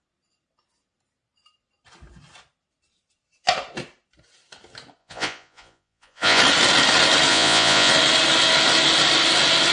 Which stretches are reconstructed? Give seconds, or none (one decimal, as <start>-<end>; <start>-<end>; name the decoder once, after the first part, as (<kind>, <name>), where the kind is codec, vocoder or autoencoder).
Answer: 5.0-6.4 (vocoder, Vocos); 7.3-7.9